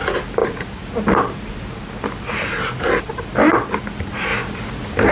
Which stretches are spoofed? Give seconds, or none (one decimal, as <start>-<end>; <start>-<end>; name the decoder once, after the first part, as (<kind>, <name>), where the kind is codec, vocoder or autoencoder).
none